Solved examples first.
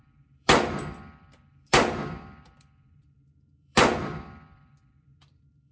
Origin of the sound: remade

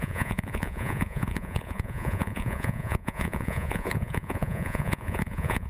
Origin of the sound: remade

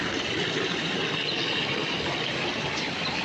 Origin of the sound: recorded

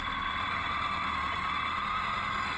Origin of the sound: recorded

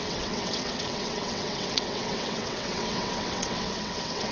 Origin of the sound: remade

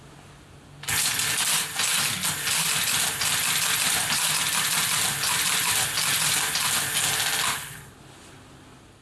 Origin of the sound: recorded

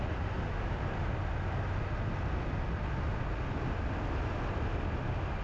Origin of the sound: recorded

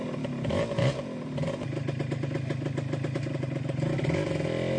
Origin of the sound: recorded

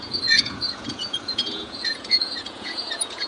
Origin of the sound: remade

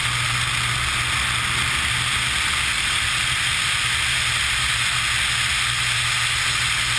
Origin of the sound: recorded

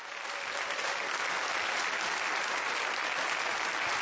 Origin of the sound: recorded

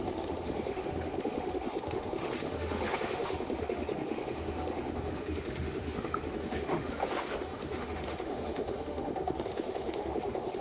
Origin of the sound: remade